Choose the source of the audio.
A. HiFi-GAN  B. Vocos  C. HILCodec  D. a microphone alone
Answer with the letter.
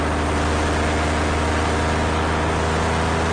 D